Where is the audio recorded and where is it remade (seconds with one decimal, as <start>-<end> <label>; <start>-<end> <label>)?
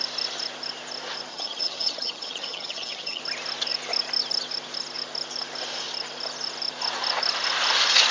0.0-1.3 recorded; 1.3-3.2 remade; 3.2-8.1 recorded